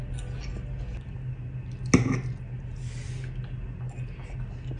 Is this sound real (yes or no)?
yes